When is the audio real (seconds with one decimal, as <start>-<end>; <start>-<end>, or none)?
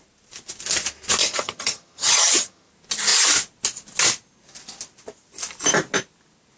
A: 0.0-1.2; 2.7-6.6